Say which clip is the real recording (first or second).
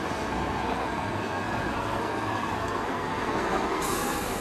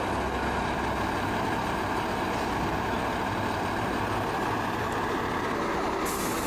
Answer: second